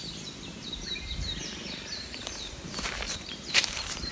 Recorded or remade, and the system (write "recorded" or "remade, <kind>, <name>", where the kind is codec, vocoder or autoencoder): remade, vocoder, BigVGAN v2